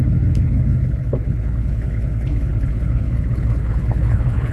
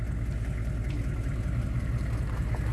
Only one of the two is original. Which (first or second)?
second